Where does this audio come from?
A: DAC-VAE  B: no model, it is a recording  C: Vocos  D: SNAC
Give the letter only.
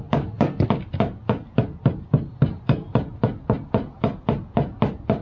B